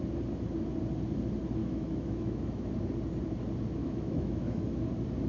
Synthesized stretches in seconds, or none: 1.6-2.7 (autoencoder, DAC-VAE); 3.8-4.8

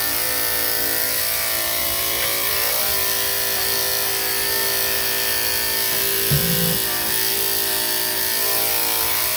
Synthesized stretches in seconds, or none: none